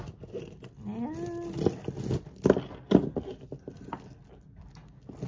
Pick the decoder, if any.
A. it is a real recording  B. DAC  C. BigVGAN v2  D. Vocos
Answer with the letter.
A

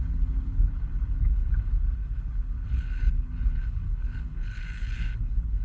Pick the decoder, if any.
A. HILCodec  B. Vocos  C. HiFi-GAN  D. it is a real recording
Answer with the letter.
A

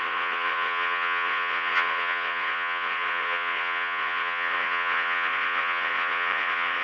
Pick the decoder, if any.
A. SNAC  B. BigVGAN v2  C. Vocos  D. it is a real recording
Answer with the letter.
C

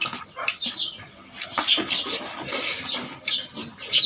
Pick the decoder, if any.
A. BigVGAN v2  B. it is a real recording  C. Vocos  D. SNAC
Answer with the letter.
B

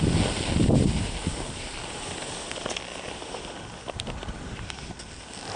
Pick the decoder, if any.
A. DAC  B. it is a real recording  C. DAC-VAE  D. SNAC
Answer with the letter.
B